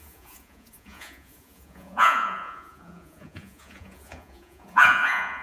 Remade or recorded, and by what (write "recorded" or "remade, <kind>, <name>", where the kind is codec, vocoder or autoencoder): remade, vocoder, Vocos